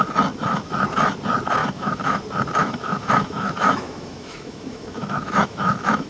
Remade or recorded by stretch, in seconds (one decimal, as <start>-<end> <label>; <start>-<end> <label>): 0.0-1.6 recorded; 1.6-2.2 remade; 2.2-2.6 recorded; 2.6-6.1 remade